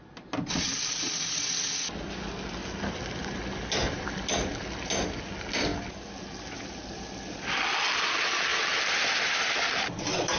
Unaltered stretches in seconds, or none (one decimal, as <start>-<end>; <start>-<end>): 0.0-10.4